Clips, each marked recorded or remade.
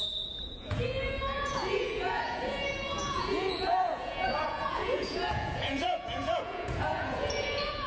remade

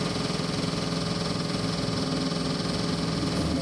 recorded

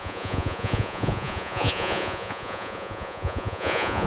remade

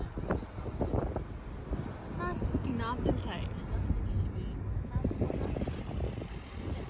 recorded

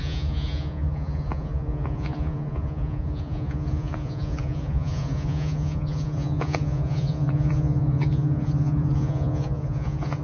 remade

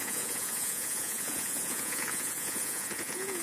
remade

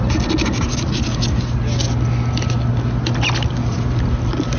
recorded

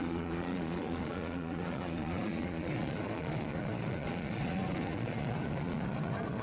remade